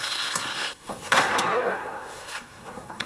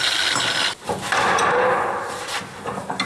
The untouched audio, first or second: second